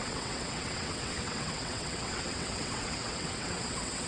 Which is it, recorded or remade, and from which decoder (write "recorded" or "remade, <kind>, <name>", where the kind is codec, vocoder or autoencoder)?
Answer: remade, vocoder, WaveNeXt